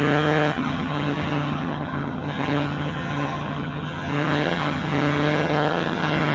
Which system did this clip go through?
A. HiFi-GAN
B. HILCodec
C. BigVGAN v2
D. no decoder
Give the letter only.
A